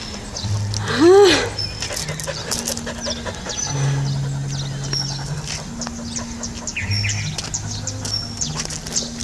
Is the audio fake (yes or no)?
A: no